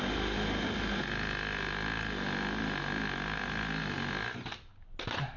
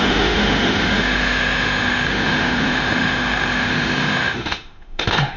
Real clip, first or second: first